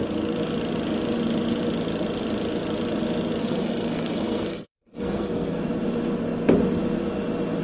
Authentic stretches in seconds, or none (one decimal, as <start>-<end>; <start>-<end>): 0.0-3.4; 5.6-7.6

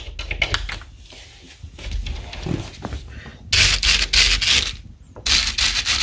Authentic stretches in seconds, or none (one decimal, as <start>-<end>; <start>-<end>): 0.0-6.0

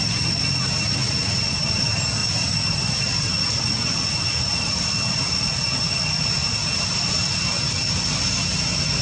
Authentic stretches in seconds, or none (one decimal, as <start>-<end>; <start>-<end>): 0.0-9.0

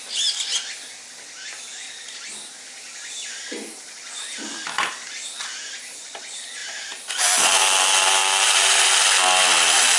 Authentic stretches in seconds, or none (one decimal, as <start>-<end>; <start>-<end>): 0.0-6.6; 7.6-8.2; 8.9-10.0

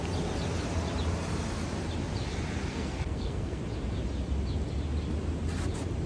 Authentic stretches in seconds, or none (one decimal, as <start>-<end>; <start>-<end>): 0.0-2.7; 3.6-6.1

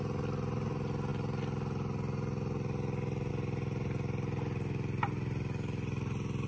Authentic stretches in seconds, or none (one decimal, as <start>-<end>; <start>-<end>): 0.0-6.5

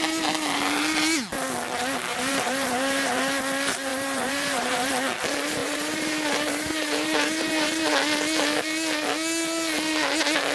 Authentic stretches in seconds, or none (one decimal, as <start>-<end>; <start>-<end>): 0.0-2.1; 3.2-3.9; 4.9-5.6; 7.8-10.5

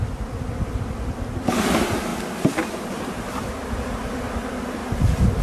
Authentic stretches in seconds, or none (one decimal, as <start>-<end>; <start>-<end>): 0.0-2.1; 3.5-5.4